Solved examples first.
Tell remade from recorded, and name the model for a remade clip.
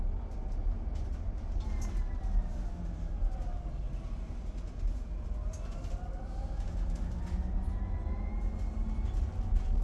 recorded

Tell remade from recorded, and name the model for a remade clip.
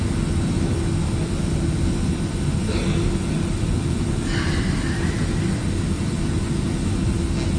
recorded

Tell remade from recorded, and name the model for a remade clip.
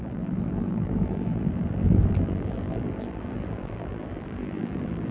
remade, vocoder, BigVGAN v2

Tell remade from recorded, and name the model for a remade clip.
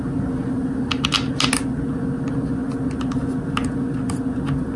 recorded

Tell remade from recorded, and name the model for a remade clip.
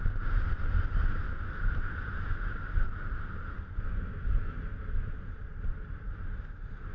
recorded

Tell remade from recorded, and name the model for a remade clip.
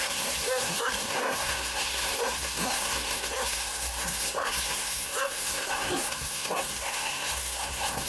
remade, codec, SNAC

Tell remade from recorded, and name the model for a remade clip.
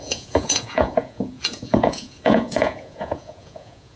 remade, vocoder, Vocos